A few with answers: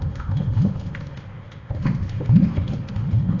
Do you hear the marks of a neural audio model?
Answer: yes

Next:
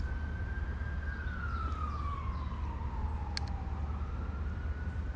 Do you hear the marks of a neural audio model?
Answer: no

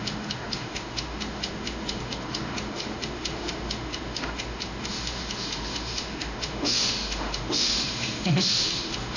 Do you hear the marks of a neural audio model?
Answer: yes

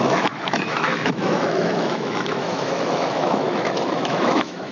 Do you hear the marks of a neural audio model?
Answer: yes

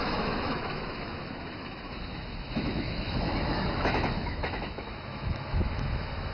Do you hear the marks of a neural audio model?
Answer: yes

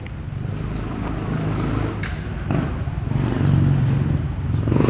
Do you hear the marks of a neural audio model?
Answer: no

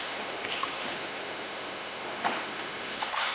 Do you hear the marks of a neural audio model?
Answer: yes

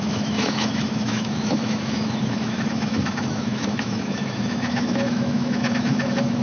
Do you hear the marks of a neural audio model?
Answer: yes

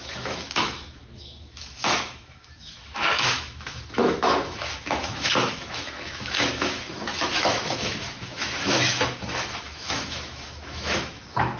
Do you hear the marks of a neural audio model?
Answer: yes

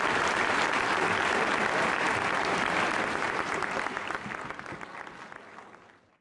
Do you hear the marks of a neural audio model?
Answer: no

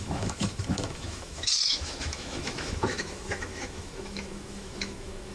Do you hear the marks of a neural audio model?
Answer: yes